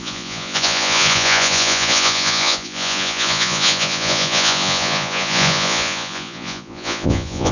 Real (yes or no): no